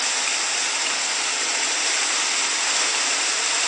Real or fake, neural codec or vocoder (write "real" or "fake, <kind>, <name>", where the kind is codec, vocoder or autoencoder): real